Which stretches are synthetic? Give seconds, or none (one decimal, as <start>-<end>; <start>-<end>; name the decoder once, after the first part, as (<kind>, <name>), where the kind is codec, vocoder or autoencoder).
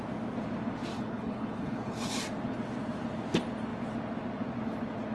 0.9-2.2 (codec, HILCodec)